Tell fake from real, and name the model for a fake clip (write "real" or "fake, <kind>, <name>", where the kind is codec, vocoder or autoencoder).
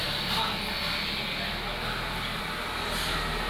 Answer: real